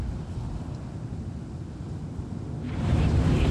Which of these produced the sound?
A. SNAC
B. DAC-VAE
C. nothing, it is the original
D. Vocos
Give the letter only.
C